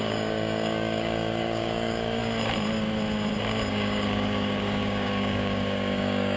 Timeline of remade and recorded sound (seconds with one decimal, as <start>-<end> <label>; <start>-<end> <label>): 0.0-2.2 remade; 2.2-3.7 recorded; 3.7-6.4 remade